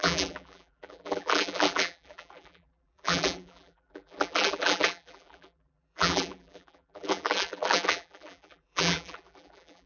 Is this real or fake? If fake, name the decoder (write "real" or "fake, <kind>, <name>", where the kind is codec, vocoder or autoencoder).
fake, vocoder, BigVGAN v2